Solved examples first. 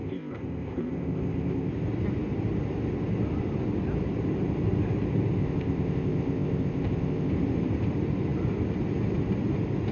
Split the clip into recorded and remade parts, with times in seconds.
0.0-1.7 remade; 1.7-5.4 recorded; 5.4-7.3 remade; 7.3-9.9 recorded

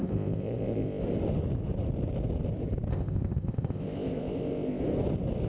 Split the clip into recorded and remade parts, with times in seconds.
0.0-1.0 remade; 1.0-2.9 recorded; 2.9-4.8 remade; 4.8-5.5 recorded

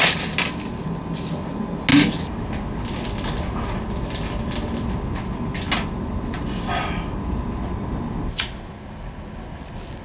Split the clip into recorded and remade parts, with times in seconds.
0.0-10.0 recorded

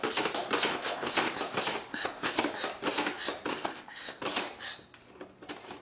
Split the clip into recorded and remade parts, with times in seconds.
0.0-0.7 recorded; 0.7-1.3 remade; 1.3-1.9 recorded; 1.9-2.4 remade; 2.4-3.5 recorded; 3.5-4.2 remade; 4.2-5.8 recorded

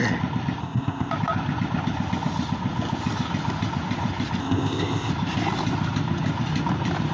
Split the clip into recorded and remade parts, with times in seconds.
0.0-0.6 recorded; 0.6-1.1 remade; 1.1-4.4 recorded; 4.4-5.1 remade; 5.1-7.1 recorded

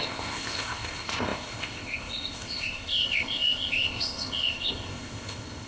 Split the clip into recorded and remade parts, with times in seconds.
0.0-5.7 remade

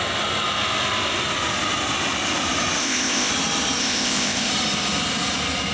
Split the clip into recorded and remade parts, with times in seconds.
0.0-2.8 recorded; 2.8-3.3 remade; 3.3-3.8 recorded; 3.8-4.5 remade; 4.5-5.7 recorded